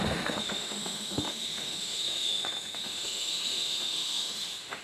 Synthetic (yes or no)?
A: yes